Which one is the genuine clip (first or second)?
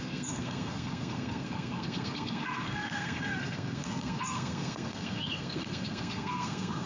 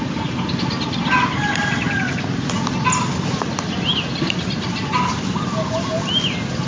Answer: second